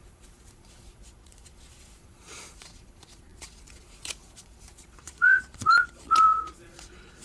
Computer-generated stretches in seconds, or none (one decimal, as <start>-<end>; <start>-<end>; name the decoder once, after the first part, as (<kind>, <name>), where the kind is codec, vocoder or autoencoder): 0.0-7.2 (vocoder, Vocos)